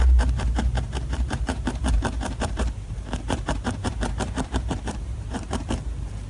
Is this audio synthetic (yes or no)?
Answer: yes